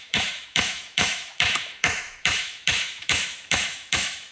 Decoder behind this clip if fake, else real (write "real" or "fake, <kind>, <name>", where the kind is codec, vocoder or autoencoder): fake, autoencoder, DAC-VAE